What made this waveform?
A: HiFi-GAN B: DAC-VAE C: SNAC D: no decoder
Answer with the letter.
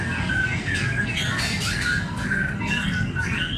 C